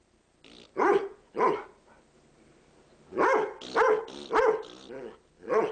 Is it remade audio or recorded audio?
recorded